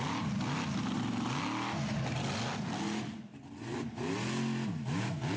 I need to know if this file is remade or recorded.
recorded